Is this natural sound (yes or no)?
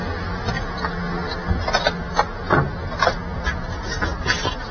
yes